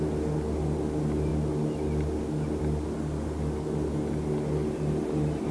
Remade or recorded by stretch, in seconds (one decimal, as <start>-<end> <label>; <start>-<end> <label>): 0.0-5.5 recorded